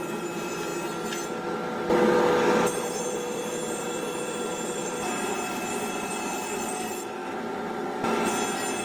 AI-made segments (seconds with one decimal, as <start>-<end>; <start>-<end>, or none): 0.0-0.7; 2.7-7.2